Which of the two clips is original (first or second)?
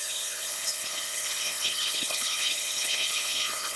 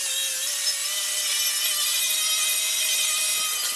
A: second